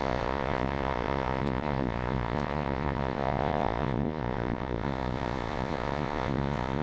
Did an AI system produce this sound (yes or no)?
yes